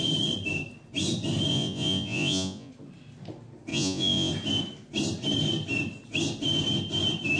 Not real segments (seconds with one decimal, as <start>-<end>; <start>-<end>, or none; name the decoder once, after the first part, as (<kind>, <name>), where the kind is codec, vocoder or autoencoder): 1.5-2.7 (vocoder, Vocos); 3.7-4.3